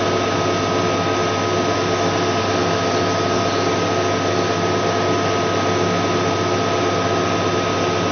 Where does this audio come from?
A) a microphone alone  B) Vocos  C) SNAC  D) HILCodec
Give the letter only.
A